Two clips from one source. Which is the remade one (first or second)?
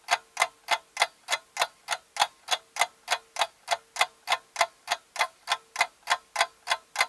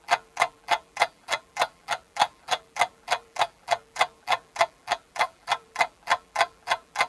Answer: second